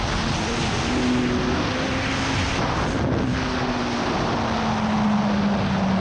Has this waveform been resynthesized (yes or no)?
no